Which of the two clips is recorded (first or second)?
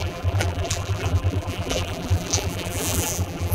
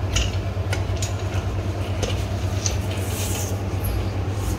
second